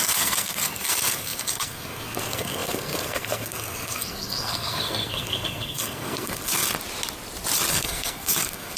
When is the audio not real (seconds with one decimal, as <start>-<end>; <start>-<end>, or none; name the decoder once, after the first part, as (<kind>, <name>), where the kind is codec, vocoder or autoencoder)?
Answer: 0.0-6.6 (codec, SNAC); 7.7-8.8